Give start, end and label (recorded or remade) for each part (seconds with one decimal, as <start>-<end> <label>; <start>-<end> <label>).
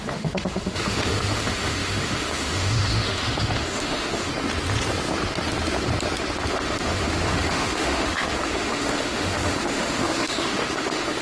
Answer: 0.0-4.3 remade; 4.3-6.5 recorded; 6.5-11.2 remade